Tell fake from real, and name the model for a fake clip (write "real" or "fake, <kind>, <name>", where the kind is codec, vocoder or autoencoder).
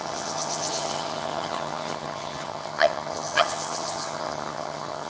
fake, vocoder, HiFi-GAN